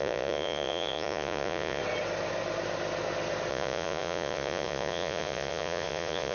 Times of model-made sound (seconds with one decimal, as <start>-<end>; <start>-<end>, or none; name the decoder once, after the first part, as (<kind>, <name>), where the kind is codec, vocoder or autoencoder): 0.0-1.8 (vocoder, Vocos); 3.5-6.3